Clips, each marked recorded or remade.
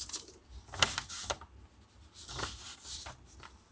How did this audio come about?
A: recorded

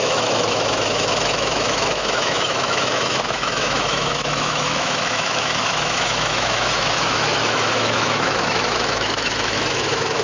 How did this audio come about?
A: remade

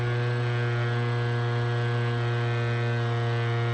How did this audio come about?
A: recorded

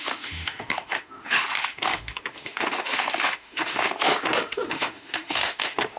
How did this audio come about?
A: remade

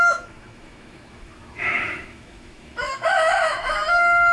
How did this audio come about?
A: remade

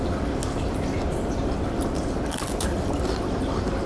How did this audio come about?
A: recorded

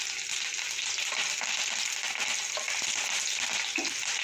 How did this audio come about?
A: recorded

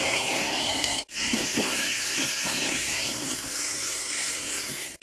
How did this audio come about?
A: remade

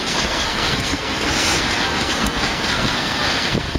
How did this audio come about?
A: remade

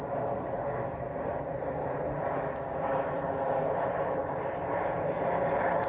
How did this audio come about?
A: recorded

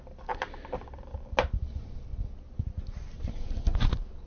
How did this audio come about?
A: recorded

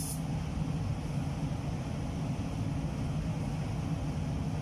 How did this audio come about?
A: recorded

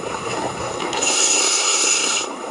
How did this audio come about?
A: remade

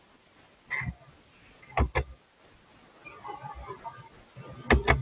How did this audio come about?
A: recorded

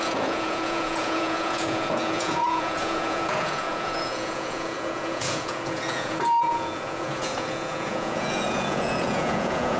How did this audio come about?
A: remade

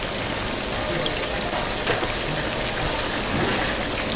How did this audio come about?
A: recorded